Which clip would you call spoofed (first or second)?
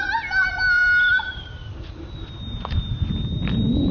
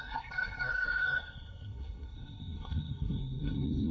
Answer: second